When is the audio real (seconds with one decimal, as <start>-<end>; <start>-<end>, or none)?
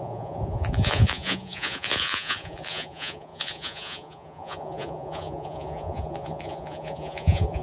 none